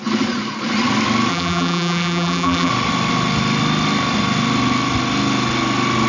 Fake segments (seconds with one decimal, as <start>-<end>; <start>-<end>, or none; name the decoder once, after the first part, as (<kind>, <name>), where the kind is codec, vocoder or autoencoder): 1.3-2.7 (vocoder, BigVGAN v2)